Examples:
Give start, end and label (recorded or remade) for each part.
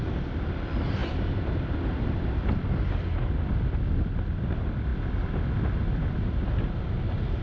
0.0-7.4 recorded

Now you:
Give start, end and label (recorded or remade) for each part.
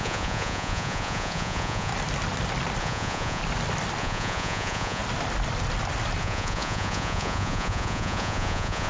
0.0-1.9 remade; 1.9-2.8 recorded; 2.8-3.4 remade; 3.4-4.0 recorded; 4.0-5.0 remade; 5.0-6.2 recorded; 6.2-8.9 remade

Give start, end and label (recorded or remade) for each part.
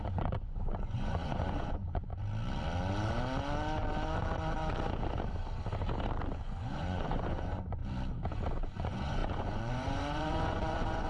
0.0-2.1 remade; 2.1-6.4 recorded; 6.4-7.8 remade; 7.8-8.5 recorded; 8.5-11.1 remade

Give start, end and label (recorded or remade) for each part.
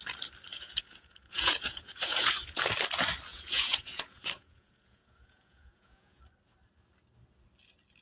0.0-0.5 recorded; 0.5-2.6 remade; 2.6-3.3 recorded; 3.3-6.2 remade; 6.2-8.0 recorded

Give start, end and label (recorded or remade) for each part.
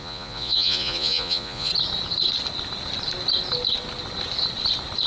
0.0-1.7 remade; 1.7-5.1 recorded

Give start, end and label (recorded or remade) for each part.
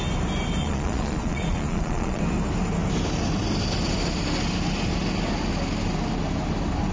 0.0-0.6 recorded; 0.6-2.2 remade; 2.2-6.9 recorded